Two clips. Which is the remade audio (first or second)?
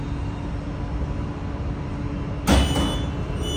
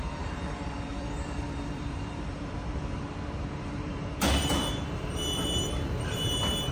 second